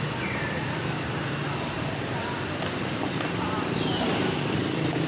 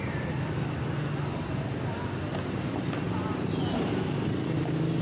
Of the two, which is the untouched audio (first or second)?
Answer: second